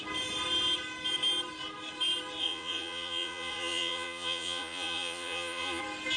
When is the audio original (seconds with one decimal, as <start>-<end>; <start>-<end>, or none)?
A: 0.0-2.4; 5.8-6.2

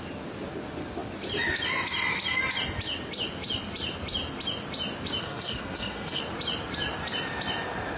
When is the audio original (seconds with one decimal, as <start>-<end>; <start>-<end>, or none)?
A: 0.0-5.2; 6.2-8.0

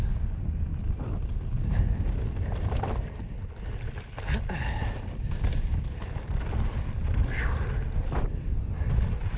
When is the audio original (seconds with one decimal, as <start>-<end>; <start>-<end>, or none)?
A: 0.0-9.4

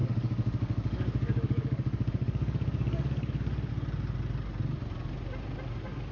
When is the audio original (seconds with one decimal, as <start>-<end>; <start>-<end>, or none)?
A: 3.7-6.1

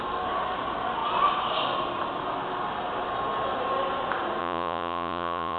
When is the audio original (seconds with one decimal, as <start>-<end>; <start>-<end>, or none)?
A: 0.0-4.4

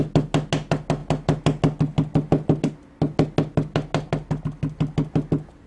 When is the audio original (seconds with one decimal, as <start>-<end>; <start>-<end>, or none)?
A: 0.0-5.7

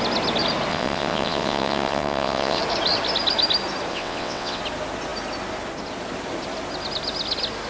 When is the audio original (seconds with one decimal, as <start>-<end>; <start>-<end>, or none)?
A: 0.0-0.7; 2.6-3.9; 4.6-7.7

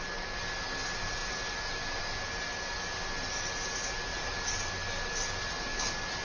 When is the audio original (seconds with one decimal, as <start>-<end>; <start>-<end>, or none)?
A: 0.0-6.2